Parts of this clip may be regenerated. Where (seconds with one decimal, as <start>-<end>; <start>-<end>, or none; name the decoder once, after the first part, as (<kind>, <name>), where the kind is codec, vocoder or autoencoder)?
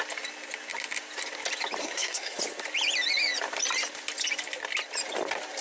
1.8-2.4 (codec, SNAC)